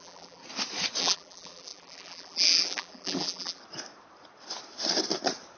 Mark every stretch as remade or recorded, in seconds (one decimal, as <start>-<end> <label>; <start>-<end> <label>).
0.0-0.4 remade; 0.4-1.0 recorded; 1.0-3.6 remade; 3.6-5.6 recorded